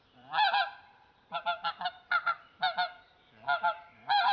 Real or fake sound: fake